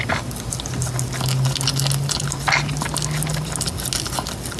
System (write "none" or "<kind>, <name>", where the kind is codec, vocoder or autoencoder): none